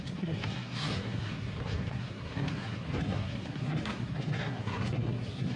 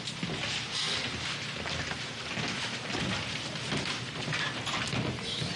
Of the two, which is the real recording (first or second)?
second